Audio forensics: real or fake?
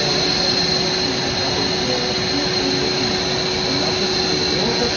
real